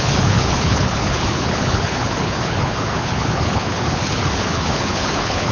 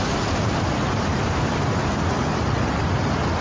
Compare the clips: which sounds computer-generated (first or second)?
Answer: first